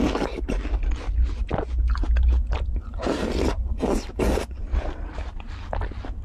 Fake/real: real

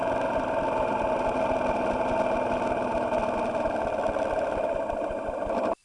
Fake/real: real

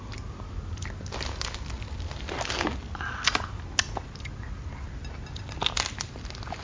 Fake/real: real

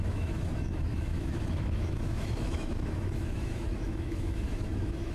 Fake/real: fake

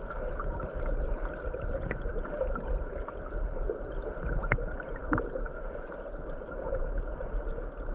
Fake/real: real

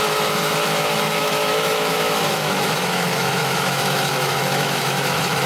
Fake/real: fake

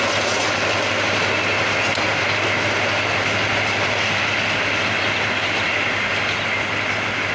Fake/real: real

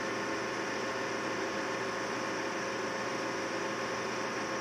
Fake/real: real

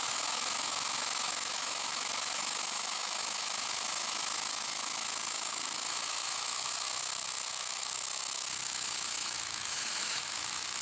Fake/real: fake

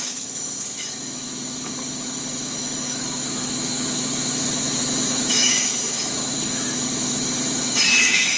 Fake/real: fake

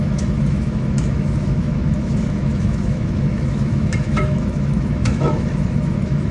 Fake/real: fake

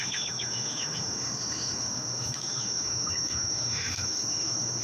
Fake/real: fake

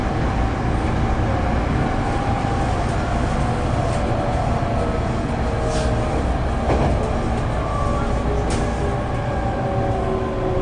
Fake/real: real